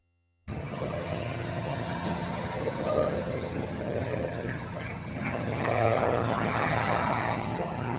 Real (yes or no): no